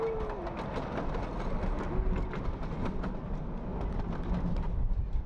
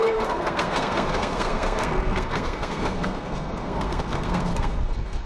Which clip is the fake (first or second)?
second